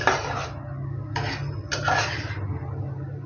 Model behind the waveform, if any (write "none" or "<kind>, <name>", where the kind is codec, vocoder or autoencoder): none